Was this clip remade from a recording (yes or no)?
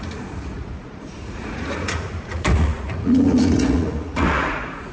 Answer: yes